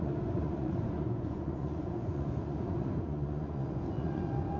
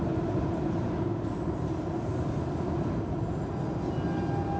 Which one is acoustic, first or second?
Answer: second